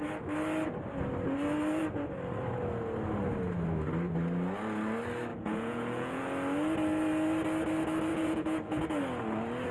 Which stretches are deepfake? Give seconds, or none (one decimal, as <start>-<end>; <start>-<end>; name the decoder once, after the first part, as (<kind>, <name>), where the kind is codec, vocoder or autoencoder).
5.3-6.2 (vocoder, Vocos); 8.1-8.8